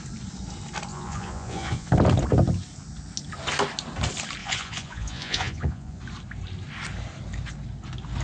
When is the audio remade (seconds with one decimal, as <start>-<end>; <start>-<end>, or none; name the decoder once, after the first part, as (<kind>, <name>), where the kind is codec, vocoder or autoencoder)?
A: 0.9-1.9 (vocoder, Vocos); 4.4-6.0